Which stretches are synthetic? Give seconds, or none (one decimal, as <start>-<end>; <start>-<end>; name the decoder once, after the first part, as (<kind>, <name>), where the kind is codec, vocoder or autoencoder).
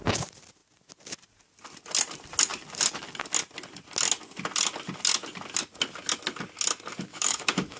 7.1-7.8 (autoencoder, DAC-VAE)